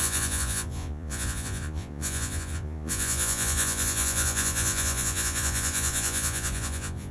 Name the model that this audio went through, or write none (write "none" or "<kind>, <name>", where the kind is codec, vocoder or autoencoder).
vocoder, Vocos